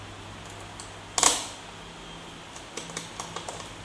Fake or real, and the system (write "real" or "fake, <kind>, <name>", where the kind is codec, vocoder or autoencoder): real